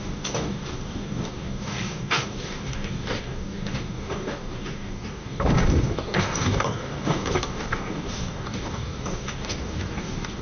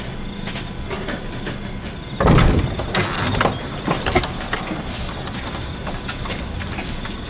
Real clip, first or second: second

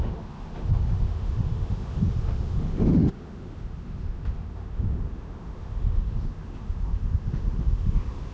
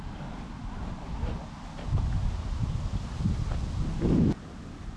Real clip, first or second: second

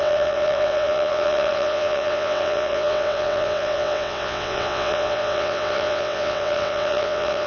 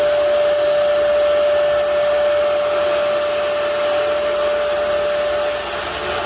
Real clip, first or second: second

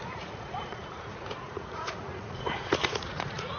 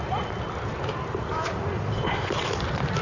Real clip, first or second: second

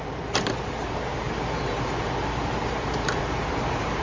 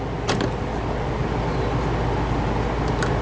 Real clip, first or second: second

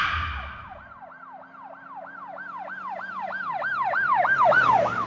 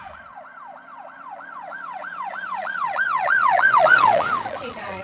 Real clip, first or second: first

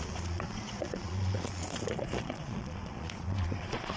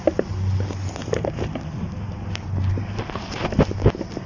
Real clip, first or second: second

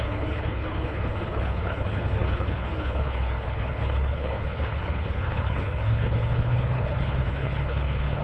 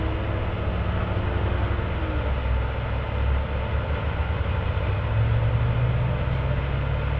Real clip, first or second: second